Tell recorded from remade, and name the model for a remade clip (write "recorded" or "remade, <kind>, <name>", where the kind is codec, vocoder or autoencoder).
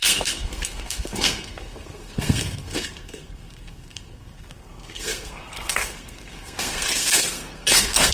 remade, codec, SNAC